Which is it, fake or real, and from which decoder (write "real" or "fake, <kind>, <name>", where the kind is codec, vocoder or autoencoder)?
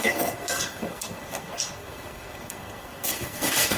fake, codec, SNAC